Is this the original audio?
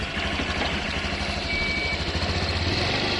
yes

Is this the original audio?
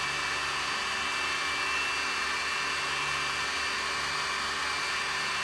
yes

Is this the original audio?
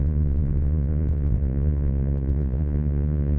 no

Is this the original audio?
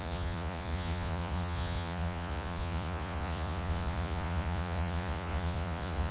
no